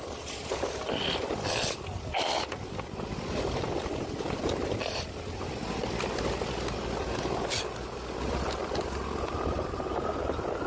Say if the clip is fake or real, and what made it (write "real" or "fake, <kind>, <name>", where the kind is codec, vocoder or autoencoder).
real